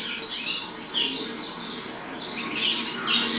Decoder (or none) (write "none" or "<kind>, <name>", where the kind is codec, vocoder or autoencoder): none